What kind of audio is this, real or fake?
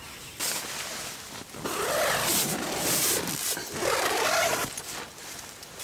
real